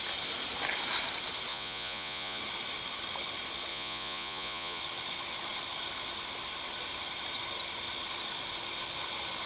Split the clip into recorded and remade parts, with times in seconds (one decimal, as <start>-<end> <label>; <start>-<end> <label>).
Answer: 0.0-1.5 recorded; 1.5-2.4 remade; 2.4-3.7 recorded; 3.7-4.8 remade; 4.8-9.5 recorded